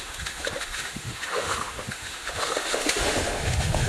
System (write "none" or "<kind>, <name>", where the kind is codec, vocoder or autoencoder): autoencoder, DAC-VAE